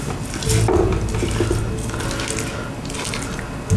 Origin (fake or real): real